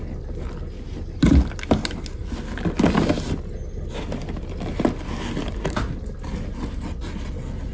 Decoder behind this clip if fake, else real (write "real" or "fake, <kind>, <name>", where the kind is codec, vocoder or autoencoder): real